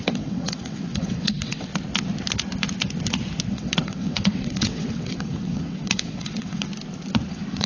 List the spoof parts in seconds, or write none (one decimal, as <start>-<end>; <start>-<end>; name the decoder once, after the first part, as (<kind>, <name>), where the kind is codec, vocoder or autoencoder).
0.0-1.7 (vocoder, WaveNeXt); 3.5-6.7; 7.3-7.7